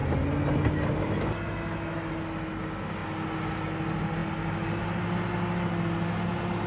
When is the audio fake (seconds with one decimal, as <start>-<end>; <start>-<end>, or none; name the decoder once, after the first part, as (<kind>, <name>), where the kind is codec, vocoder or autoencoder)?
none